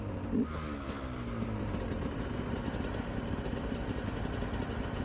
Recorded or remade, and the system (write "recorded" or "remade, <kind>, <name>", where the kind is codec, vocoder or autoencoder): recorded